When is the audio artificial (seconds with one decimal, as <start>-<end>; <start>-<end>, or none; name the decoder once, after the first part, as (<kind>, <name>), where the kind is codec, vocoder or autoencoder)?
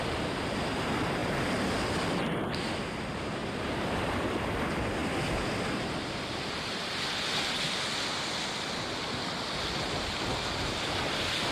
3.4-4.2 (vocoder, BigVGAN v2)